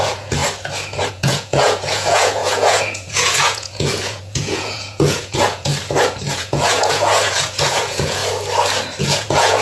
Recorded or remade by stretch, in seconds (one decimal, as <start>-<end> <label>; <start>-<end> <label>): 0.0-0.4 remade; 0.4-1.1 recorded; 1.1-5.7 remade; 5.7-6.3 recorded; 6.3-8.2 remade; 8.2-9.0 recorded; 9.0-9.6 remade

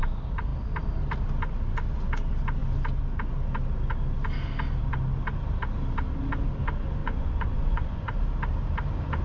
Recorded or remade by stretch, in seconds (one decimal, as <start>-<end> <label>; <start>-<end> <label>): 0.0-7.0 recorded; 7.0-8.0 remade; 8.0-9.2 recorded

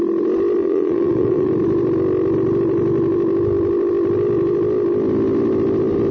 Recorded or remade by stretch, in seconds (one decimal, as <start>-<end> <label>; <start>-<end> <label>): 0.0-0.6 recorded; 0.6-1.5 remade; 1.5-6.1 recorded

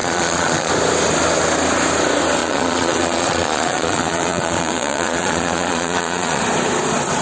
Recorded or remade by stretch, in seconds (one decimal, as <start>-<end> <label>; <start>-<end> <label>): 0.0-0.7 remade; 0.7-2.4 recorded; 2.4-6.4 remade; 6.4-7.2 recorded